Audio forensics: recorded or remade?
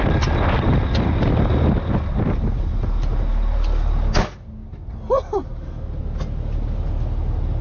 recorded